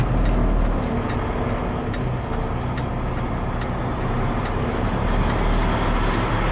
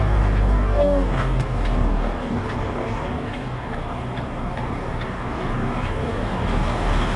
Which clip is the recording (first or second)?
first